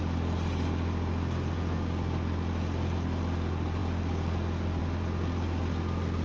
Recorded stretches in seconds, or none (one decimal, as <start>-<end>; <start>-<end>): 0.0-6.2